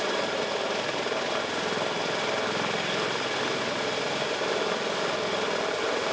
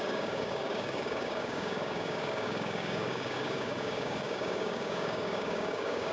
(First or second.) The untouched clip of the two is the first